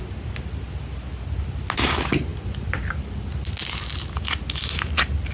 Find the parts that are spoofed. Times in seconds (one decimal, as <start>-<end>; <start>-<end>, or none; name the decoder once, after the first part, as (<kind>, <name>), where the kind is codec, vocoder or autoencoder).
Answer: none